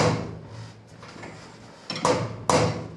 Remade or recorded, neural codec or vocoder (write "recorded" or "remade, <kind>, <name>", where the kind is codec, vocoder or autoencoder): recorded